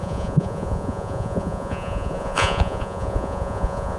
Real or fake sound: fake